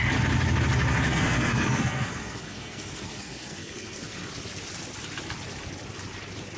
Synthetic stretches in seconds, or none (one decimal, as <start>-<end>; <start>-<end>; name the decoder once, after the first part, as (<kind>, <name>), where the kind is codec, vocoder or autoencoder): 1.1-4.3 (codec, SNAC)